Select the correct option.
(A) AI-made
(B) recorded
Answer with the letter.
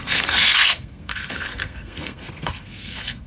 A